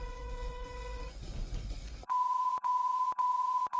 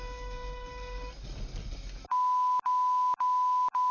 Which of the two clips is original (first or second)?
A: second